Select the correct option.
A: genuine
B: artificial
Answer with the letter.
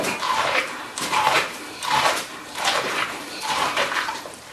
B